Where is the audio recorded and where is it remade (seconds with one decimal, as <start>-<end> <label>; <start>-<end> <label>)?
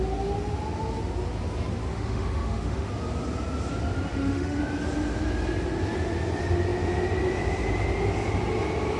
0.0-1.9 recorded; 1.9-2.9 remade; 2.9-4.1 recorded; 4.1-4.6 remade; 4.6-9.0 recorded